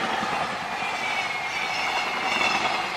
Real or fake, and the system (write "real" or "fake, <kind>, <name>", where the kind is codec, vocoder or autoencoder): real